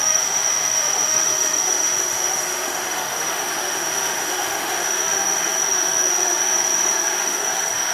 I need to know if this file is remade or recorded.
remade